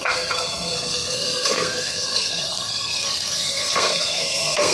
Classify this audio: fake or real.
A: fake